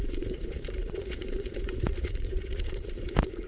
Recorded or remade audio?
remade